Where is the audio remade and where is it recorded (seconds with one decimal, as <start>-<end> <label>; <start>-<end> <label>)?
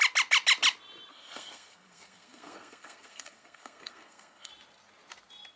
0.0-1.1 recorded; 1.1-4.5 remade; 4.5-5.6 recorded